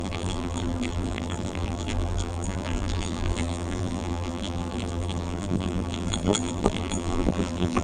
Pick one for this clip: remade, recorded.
remade